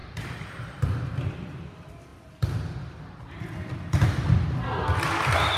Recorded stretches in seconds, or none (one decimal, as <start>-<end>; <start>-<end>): 0.0-5.6